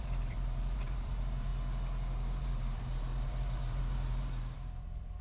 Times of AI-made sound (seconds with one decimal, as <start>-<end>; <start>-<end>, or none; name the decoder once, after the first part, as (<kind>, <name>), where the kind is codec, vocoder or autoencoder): 0.0-1.5 (vocoder, BigVGAN v2); 2.4-5.2